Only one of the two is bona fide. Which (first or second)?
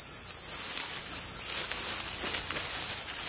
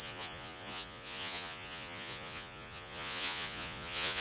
first